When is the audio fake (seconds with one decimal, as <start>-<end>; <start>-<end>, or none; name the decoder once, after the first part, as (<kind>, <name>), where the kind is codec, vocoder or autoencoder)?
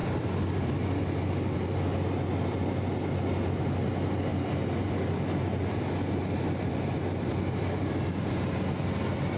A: 0.0-0.7 (vocoder, BigVGAN v2)